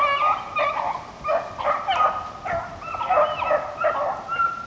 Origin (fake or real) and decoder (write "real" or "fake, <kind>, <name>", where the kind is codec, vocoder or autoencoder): real